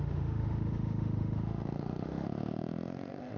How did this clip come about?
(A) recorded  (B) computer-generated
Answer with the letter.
B